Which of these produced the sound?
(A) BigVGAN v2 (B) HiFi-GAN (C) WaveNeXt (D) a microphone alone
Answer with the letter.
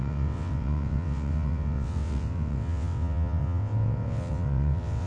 C